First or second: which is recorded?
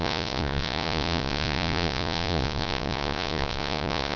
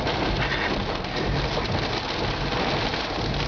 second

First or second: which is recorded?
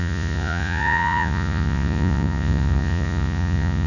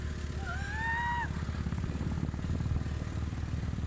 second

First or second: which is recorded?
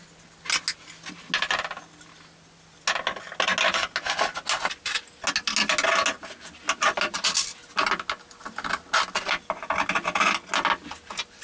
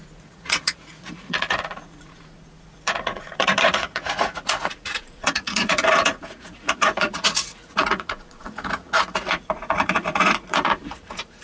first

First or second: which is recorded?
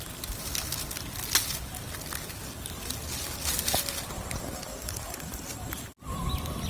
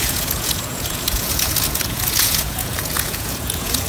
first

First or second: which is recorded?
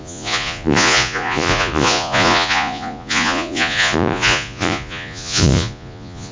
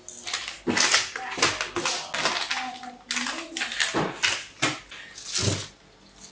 second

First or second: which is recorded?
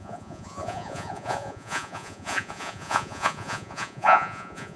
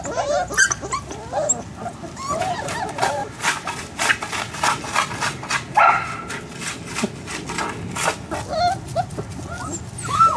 second